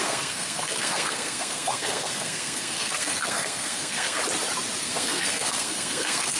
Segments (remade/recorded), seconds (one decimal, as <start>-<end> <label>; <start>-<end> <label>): 0.0-4.2 remade; 4.2-4.8 recorded; 4.8-6.4 remade

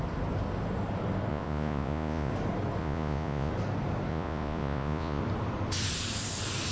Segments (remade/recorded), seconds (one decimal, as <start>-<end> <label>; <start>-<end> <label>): 0.0-1.3 recorded; 1.3-2.3 remade; 2.3-2.8 recorded; 2.8-3.5 remade; 3.5-4.1 recorded; 4.1-5.2 remade; 5.2-6.7 recorded

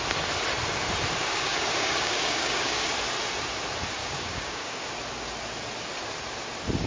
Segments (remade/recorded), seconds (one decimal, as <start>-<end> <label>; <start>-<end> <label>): 0.0-1.2 recorded; 1.2-2.9 remade; 2.9-4.0 recorded; 4.0-4.9 remade; 4.9-6.9 recorded